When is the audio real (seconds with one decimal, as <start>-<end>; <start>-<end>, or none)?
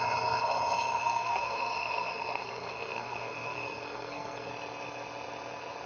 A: 0.0-1.0; 4.5-5.9